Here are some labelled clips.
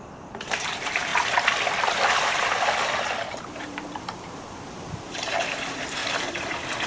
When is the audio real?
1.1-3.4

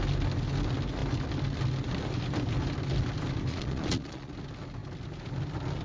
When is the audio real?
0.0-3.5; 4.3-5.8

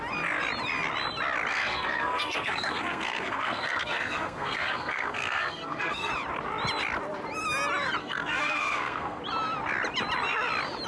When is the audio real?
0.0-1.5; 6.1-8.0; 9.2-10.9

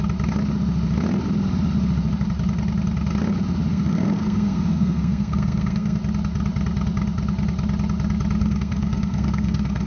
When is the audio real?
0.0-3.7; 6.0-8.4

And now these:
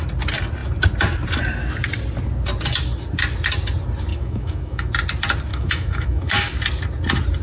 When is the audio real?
0.0-4.1; 4.9-5.5; 6.5-7.4

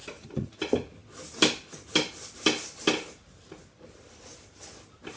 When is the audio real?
0.6-5.2